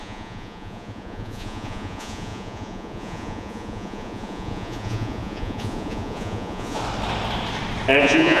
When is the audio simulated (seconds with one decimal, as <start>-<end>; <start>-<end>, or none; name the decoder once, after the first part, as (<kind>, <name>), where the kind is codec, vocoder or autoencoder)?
0.0-6.8 (vocoder, Vocos); 8.0-8.4